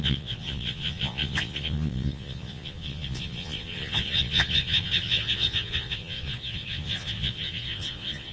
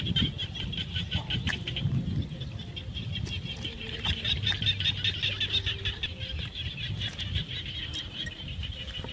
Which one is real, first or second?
second